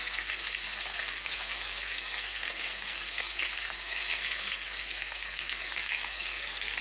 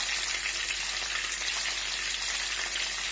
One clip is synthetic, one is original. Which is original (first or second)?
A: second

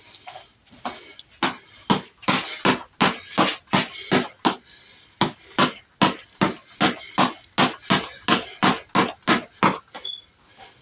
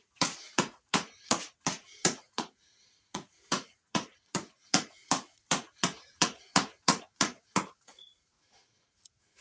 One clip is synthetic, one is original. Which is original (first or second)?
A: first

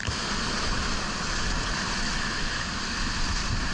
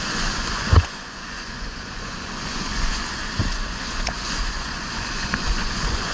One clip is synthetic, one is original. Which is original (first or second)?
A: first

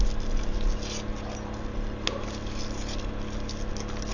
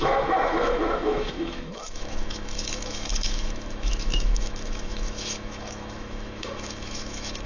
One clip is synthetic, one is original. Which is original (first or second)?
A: first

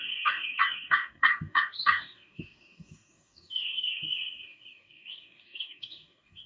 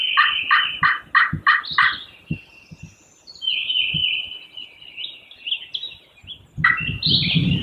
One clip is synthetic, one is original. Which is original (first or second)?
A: second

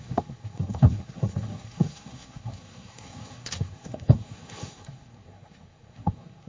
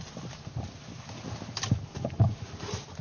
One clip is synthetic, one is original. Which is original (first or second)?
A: second